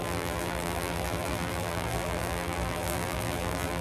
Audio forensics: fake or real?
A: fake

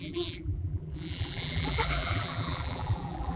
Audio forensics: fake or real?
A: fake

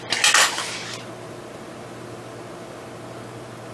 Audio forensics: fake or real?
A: real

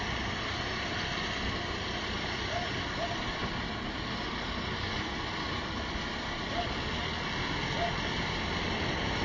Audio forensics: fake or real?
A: real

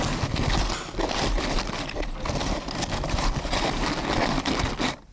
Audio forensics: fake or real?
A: fake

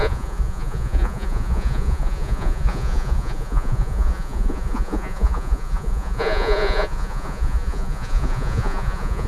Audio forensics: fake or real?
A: fake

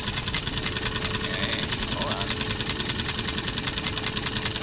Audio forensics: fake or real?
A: real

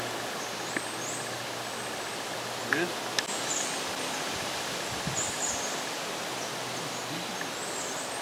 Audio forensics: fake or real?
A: real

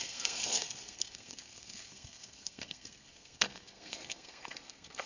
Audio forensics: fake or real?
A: fake